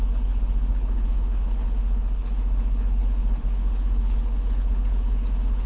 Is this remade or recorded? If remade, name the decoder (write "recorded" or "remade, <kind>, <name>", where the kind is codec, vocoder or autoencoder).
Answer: remade, codec, HILCodec